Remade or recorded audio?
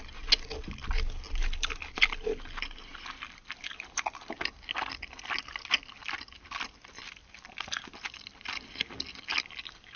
recorded